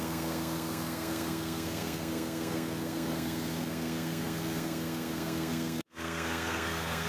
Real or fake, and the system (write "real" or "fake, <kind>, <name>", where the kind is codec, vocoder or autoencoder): fake, codec, SNAC